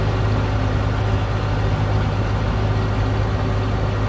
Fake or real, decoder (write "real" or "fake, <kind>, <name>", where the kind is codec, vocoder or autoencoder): real